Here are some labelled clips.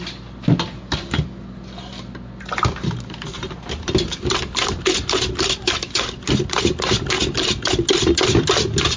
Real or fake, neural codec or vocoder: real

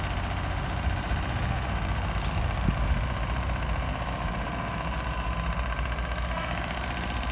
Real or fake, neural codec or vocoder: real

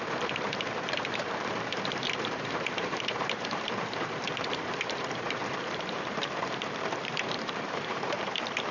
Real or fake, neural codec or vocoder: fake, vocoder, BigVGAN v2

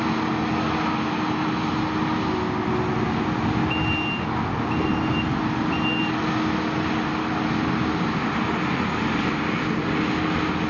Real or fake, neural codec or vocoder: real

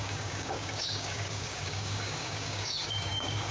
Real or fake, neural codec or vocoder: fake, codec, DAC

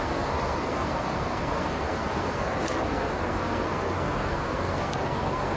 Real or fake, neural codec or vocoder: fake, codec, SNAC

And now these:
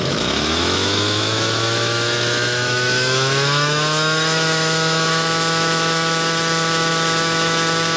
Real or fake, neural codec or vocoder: fake, autoencoder, DAC-VAE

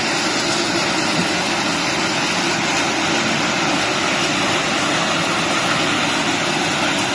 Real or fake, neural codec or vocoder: real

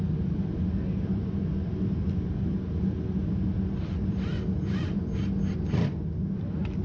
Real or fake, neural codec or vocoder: real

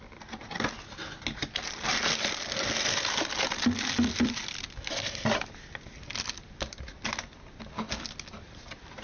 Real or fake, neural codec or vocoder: real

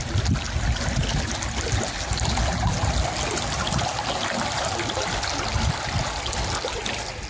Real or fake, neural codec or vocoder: real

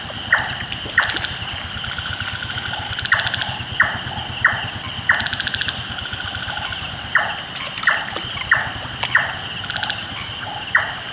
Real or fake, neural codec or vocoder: real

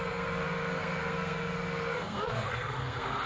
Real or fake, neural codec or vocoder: fake, codec, SNAC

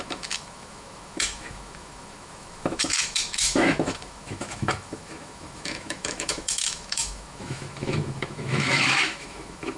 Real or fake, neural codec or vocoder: fake, autoencoder, DAC-VAE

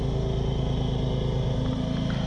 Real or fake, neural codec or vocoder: real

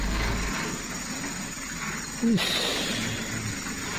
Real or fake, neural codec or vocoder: real